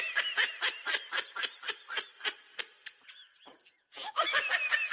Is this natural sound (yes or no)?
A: yes